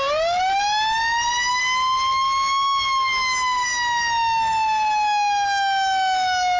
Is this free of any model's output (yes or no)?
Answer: yes